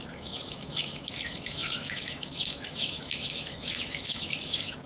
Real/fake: fake